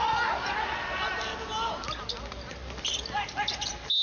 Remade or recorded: recorded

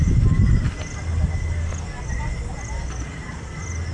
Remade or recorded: recorded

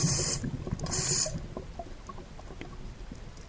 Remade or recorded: recorded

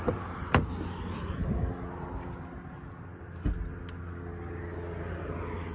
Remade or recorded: recorded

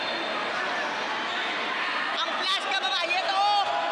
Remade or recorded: recorded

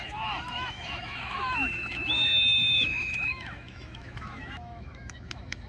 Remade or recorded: remade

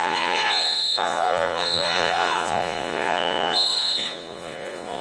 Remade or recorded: remade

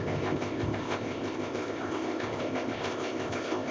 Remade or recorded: remade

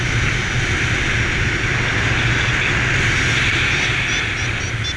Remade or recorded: recorded